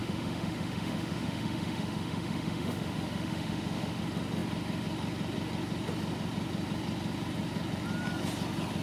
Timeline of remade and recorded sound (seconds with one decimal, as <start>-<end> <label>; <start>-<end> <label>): 0.0-4.0 remade; 4.0-8.8 recorded